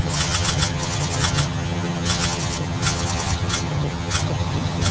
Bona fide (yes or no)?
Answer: no